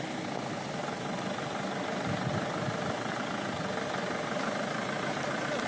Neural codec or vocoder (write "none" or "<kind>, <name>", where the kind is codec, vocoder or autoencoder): none